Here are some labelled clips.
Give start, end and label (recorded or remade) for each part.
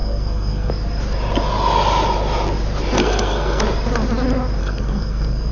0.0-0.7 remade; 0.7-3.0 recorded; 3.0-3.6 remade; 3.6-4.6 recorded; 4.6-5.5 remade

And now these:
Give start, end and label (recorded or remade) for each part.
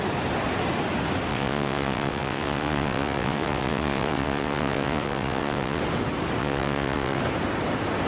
0.0-1.3 recorded; 1.3-5.8 remade; 5.8-6.4 recorded; 6.4-7.2 remade; 7.2-8.1 recorded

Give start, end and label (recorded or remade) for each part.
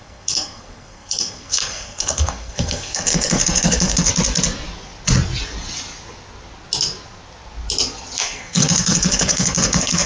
0.0-4.1 remade; 4.1-8.2 recorded; 8.2-10.1 remade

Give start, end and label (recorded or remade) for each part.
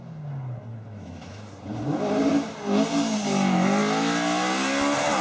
0.0-0.7 recorded; 0.7-1.5 remade; 1.5-5.2 recorded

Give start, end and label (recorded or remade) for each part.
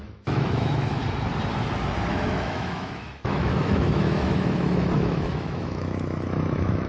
0.0-1.0 remade; 1.0-2.1 recorded; 2.1-6.9 remade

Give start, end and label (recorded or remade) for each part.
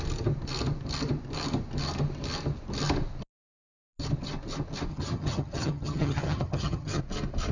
0.0-4.9 recorded; 4.9-7.0 remade; 7.0-7.5 recorded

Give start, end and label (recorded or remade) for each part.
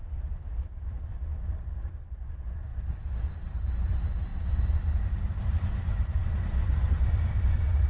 0.0-2.7 remade; 2.7-3.3 recorded; 3.3-4.3 remade; 4.3-5.0 recorded; 5.0-7.9 remade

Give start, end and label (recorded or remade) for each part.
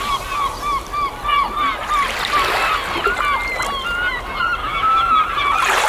0.0-4.6 recorded; 4.6-5.1 remade; 5.1-5.9 recorded